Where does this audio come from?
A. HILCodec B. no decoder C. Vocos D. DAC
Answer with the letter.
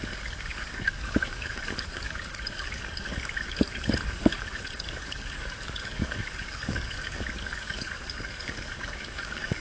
D